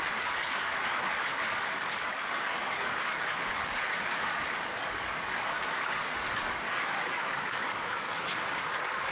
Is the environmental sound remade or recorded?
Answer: remade